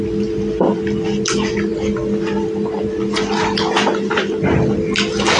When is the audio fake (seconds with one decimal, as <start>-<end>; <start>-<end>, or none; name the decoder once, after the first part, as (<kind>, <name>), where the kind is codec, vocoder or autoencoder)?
none